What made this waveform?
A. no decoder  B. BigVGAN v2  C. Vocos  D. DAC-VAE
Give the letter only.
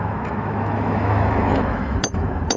D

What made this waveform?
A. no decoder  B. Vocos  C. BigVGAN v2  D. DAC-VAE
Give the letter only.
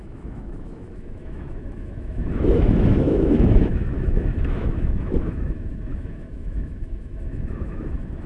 D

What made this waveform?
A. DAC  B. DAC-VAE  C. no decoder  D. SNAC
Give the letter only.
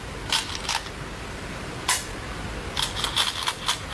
C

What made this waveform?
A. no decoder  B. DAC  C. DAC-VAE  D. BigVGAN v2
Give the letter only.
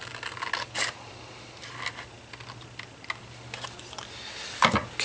A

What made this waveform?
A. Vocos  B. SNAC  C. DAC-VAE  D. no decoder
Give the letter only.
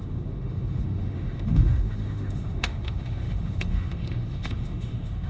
C